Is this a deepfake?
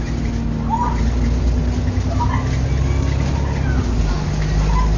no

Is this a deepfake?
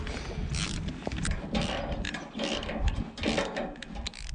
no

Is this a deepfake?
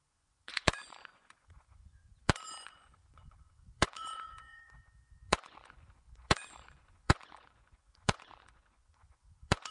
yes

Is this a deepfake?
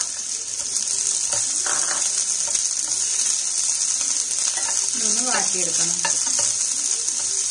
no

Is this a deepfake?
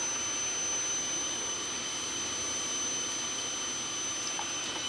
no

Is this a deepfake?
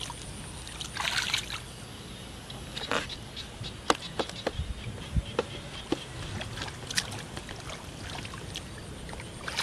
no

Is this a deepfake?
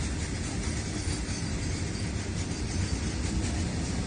no